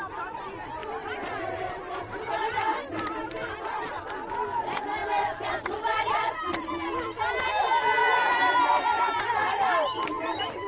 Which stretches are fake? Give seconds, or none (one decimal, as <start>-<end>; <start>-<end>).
0.8-2.0; 2.7-3.2; 5.0-7.2; 8.0-9.2